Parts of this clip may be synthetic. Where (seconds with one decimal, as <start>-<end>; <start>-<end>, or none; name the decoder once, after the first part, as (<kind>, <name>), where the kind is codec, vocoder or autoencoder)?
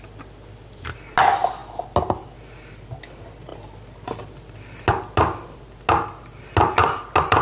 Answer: none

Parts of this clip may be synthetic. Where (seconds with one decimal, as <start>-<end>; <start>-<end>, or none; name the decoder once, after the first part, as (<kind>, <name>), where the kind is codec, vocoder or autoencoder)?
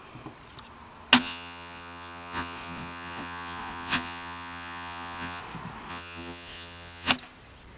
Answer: 1.2-5.4 (vocoder, Vocos); 5.9-7.1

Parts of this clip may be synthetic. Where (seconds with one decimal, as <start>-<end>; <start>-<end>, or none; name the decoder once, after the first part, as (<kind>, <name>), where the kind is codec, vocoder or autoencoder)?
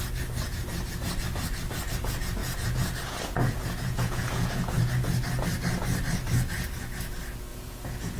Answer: 2.4-4.9 (vocoder, Vocos); 7.5-8.2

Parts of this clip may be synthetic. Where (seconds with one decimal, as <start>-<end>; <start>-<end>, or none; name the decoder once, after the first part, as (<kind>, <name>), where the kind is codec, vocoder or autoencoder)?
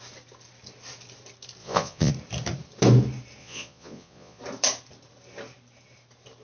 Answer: 1.6-2.1 (vocoder, Vocos); 3.4-4.4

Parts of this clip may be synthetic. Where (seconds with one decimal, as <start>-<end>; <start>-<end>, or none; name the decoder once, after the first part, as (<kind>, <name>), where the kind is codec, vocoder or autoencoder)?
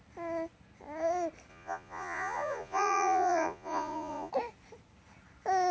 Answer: 1.5-4.3 (vocoder, Vocos)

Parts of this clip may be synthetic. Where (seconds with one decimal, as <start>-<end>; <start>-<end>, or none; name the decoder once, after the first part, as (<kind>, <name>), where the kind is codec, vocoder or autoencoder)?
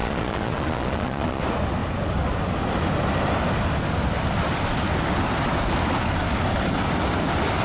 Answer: 0.0-1.4 (vocoder, Vocos)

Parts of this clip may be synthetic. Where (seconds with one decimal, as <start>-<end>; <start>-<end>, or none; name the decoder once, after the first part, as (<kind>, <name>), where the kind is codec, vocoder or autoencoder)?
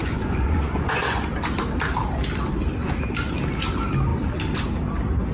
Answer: 0.0-1.3 (vocoder, Vocos)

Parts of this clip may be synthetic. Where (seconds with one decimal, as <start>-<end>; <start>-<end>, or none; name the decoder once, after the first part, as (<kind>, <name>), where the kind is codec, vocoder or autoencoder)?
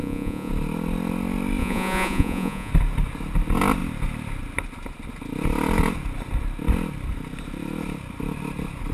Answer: 0.0-0.5 (vocoder, Vocos); 1.6-2.7